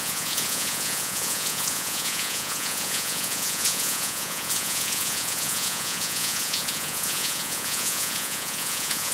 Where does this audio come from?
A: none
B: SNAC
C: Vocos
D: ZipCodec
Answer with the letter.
C